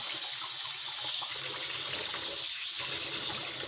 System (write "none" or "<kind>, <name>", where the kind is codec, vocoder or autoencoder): none